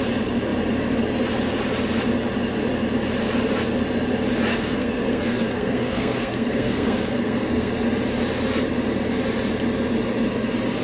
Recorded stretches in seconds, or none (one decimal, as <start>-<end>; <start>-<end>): 0.0-4.5; 7.7-10.8